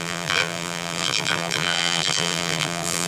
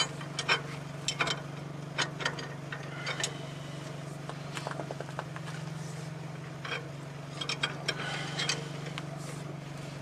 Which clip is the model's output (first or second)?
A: first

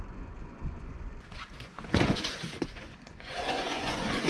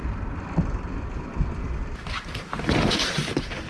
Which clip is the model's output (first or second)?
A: first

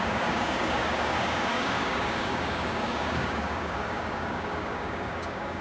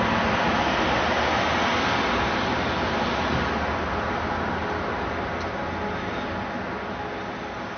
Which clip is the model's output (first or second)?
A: first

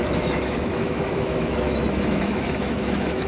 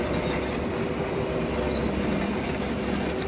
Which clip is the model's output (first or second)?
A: first